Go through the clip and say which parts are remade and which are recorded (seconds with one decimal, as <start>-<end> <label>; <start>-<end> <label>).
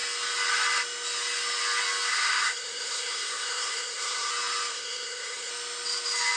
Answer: 0.0-2.1 recorded; 2.1-4.3 remade; 4.3-4.7 recorded; 4.7-5.5 remade; 5.5-6.4 recorded